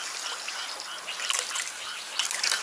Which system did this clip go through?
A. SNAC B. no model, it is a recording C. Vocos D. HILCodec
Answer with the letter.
B